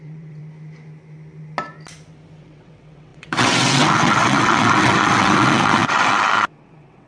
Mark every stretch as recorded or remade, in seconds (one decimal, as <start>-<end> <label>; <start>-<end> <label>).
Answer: 0.0-0.4 remade; 0.4-2.4 recorded; 2.4-7.1 remade